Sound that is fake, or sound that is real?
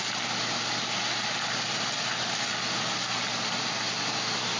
real